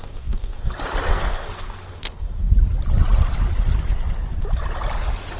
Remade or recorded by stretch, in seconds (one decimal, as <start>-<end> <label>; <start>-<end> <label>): 0.0-0.7 remade; 0.7-1.1 recorded; 1.1-2.5 remade; 2.5-5.4 recorded